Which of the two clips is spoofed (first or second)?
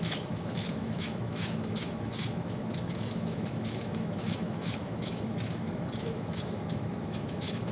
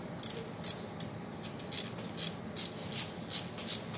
first